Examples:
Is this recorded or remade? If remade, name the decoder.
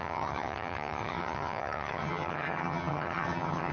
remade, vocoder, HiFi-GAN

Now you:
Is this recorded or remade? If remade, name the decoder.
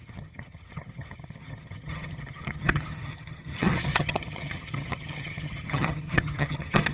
remade, vocoder, HiFi-GAN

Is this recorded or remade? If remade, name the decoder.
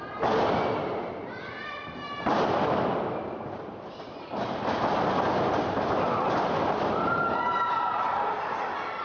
recorded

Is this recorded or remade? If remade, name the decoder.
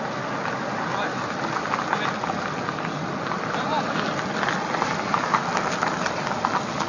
recorded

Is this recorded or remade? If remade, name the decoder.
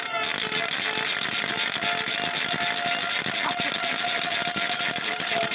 recorded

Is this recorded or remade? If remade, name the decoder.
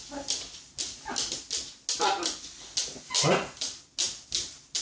recorded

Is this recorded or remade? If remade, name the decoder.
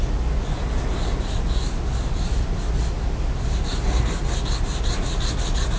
recorded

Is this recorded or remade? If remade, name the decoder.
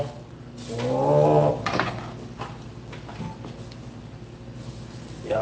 recorded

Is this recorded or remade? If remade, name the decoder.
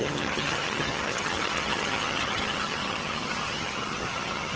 remade, vocoder, HiFi-GAN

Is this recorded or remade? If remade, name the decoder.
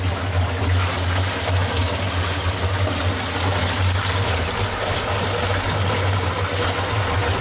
recorded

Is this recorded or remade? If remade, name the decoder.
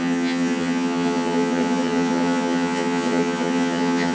remade, vocoder, HiFi-GAN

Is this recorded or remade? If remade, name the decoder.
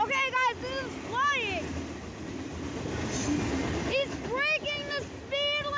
recorded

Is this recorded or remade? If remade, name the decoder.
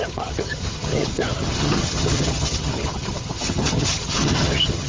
remade, vocoder, HiFi-GAN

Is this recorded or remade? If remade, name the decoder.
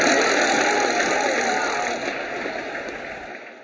recorded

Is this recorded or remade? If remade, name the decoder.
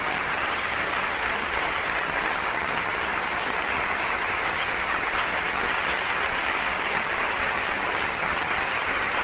remade, vocoder, HiFi-GAN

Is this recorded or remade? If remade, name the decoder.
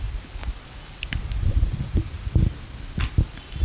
recorded